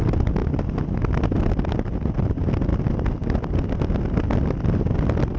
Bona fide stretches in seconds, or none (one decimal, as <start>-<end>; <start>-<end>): 0.0-5.4